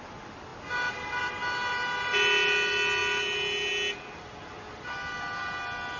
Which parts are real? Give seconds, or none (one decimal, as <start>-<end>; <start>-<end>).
0.0-6.0